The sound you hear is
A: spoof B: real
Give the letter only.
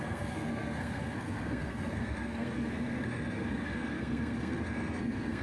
A